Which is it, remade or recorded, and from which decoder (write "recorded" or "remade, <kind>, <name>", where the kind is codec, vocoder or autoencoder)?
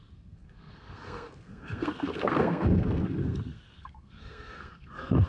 remade, codec, SNAC